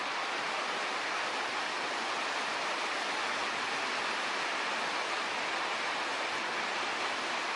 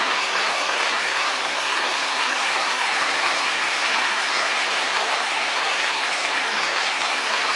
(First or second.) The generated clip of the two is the second